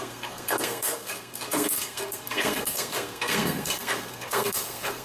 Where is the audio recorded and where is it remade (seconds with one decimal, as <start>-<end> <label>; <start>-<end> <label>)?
0.0-5.0 remade